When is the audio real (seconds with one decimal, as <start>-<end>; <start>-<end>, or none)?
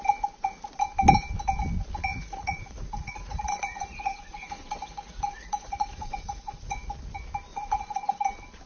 0.0-2.1; 6.9-7.5; 8.1-8.7